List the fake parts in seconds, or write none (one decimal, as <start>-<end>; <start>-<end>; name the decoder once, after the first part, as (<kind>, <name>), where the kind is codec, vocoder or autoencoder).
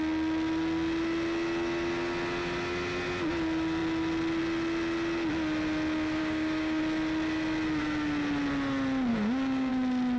6.2-6.8 (codec, DAC); 9.1-9.7